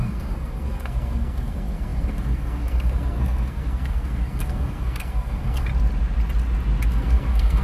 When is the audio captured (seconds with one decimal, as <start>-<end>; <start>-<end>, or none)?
5.7-6.9